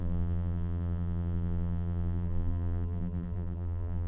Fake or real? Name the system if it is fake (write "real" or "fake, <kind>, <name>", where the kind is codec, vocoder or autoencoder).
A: fake, vocoder, BigVGAN v2